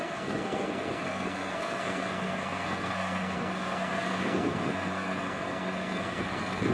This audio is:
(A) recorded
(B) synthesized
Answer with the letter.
B